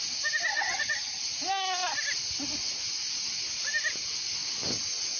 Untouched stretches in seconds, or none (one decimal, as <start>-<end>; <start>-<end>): 0.0-0.5; 1.2-5.2